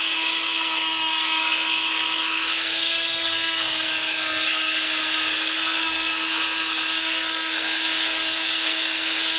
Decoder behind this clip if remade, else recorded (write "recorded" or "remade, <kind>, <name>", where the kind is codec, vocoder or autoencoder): remade, codec, SNAC